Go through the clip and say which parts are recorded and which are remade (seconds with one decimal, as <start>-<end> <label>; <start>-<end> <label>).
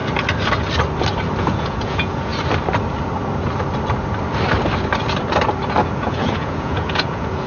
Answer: 0.0-1.4 recorded; 1.4-2.3 remade; 2.3-6.0 recorded; 6.0-7.5 remade